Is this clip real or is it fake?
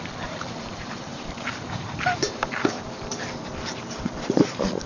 fake